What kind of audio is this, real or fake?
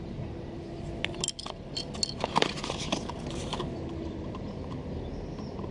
real